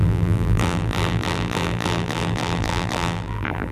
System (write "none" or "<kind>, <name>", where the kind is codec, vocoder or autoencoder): vocoder, BigVGAN v2